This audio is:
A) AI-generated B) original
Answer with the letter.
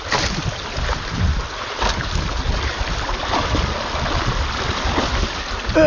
B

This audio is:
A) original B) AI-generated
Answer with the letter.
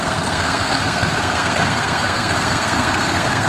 B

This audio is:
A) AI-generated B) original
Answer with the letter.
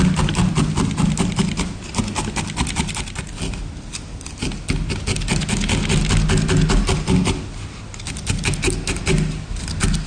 B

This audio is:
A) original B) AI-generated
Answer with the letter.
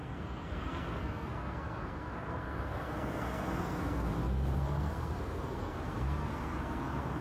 B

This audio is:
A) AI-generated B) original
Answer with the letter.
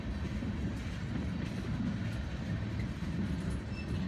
B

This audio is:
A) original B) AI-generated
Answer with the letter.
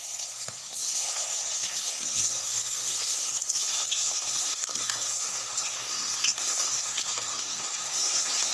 B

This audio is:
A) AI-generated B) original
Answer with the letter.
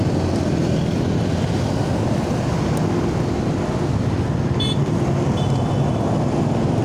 B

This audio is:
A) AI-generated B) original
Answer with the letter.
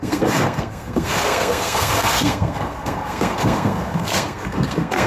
A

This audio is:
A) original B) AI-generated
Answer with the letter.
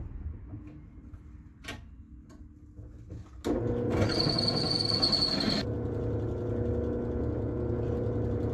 A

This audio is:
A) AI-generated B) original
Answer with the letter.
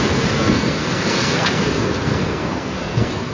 A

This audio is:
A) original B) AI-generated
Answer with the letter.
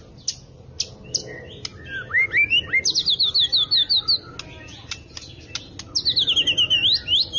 A